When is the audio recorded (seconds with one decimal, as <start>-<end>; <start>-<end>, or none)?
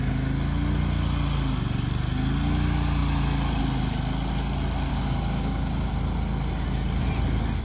0.0-4.9; 5.9-7.6